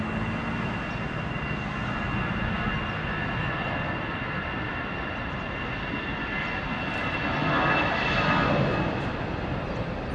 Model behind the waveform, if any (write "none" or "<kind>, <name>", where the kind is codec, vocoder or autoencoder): none